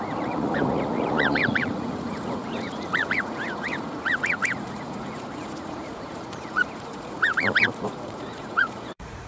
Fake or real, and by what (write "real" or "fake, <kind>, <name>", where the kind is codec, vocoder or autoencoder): fake, vocoder, Vocos